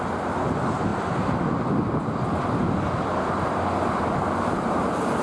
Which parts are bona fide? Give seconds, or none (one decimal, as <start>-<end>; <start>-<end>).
0.0-5.2